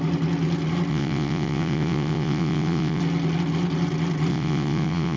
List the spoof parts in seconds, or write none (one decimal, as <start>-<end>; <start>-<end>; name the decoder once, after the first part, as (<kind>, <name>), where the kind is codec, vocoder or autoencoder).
0.9-3.0 (vocoder, WaveNeXt); 4.3-5.2